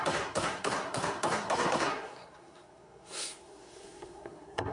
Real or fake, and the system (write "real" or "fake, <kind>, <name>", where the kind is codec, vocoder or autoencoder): fake, codec, SNAC